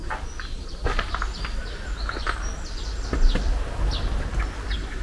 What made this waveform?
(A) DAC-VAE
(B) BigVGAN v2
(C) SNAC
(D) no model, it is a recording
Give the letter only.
D